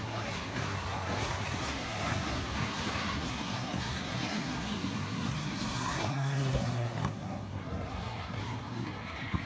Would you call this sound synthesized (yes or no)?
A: yes